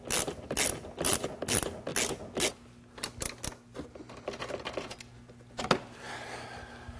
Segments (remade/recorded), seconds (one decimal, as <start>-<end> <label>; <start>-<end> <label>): 0.0-7.0 recorded